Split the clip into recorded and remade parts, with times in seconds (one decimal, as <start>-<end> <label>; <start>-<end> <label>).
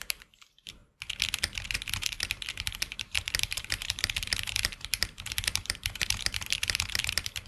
0.0-0.8 remade; 0.8-2.5 recorded; 2.5-7.5 remade